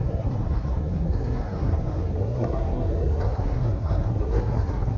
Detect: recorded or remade remade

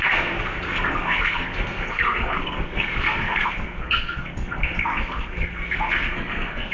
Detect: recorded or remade remade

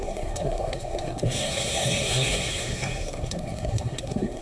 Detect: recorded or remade remade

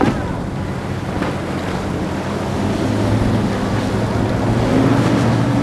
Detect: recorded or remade recorded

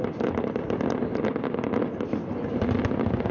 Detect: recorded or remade recorded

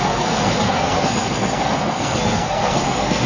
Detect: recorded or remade remade